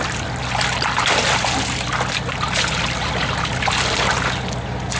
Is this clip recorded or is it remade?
recorded